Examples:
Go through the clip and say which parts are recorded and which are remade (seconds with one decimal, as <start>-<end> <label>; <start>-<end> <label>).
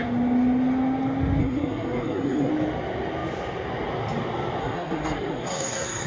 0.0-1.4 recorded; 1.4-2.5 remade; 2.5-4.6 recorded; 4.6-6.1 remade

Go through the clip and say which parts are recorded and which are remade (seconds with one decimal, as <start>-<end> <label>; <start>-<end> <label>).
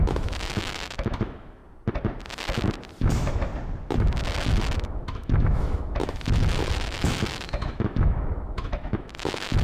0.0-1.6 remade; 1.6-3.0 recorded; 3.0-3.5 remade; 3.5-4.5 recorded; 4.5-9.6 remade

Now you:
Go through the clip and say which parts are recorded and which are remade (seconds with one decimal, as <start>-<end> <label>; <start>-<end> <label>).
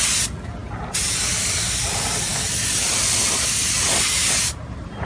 0.0-5.1 recorded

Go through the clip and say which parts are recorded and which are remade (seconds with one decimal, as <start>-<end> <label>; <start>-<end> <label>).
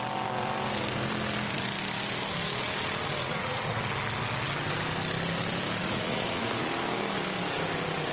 0.0-3.2 recorded; 3.2-3.8 remade; 3.8-5.8 recorded; 5.8-6.7 remade; 6.7-8.1 recorded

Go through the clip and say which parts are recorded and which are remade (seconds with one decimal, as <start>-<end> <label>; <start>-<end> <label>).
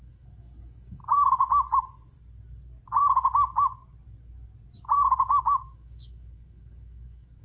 0.0-1.0 remade; 1.0-5.4 recorded; 5.4-7.4 remade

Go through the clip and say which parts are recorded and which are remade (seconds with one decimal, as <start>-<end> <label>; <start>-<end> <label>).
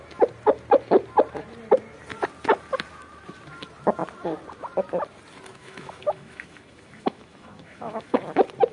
0.0-5.5 recorded; 5.5-8.2 remade; 8.2-8.7 recorded